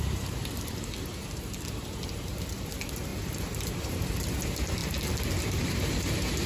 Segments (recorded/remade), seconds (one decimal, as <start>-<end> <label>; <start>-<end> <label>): 0.0-4.8 remade; 4.8-5.4 recorded; 5.4-6.5 remade